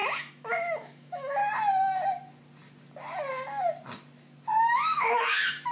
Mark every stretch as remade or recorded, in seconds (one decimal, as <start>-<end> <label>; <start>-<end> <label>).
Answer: 0.0-1.4 remade; 1.4-4.6 recorded; 4.6-5.7 remade